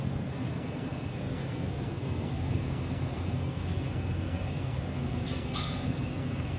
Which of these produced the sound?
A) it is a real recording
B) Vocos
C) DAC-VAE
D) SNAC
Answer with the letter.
D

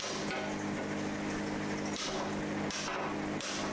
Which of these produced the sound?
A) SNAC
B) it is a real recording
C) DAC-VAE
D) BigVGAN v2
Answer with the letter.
B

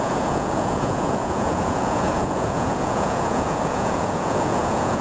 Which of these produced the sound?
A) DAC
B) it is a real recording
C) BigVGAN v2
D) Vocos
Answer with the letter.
D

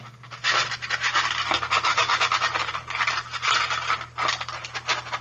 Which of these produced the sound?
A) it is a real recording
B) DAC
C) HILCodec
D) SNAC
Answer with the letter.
A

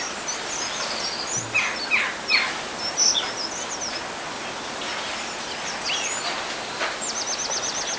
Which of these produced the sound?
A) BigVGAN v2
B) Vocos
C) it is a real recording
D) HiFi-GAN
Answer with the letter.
C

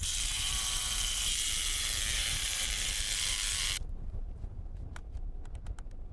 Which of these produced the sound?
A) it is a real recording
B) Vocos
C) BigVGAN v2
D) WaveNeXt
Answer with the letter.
C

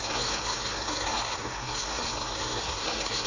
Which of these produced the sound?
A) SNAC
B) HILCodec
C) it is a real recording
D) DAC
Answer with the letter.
A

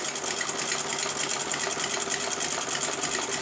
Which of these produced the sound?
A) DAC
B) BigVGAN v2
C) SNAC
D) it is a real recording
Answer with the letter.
D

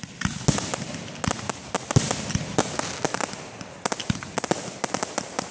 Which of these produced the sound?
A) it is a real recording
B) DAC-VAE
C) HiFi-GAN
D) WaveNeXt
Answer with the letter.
A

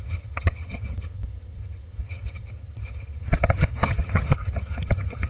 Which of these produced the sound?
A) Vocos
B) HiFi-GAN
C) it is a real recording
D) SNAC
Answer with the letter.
B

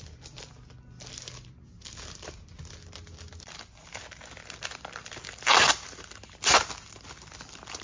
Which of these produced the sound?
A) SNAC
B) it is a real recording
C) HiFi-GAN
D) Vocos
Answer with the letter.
B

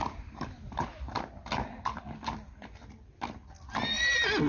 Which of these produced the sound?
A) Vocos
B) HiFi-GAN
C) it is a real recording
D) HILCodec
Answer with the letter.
C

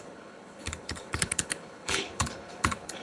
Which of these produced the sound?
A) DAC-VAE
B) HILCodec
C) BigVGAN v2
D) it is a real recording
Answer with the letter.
B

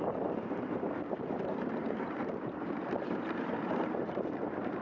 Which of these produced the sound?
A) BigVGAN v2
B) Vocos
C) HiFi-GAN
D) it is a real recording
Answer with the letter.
A